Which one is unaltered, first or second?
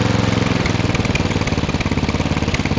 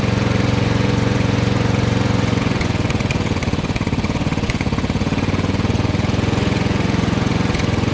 first